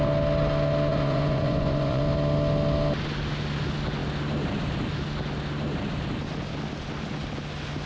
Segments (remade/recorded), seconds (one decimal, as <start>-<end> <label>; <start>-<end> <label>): 0.0-0.9 recorded; 0.9-2.0 remade; 2.0-7.9 recorded